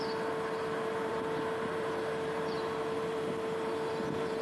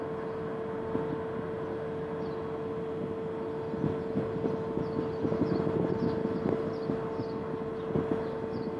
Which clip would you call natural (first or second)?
second